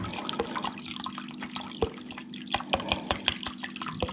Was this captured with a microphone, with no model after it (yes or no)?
yes